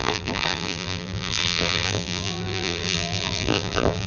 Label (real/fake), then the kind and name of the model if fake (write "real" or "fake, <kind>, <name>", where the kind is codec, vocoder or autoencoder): fake, vocoder, BigVGAN v2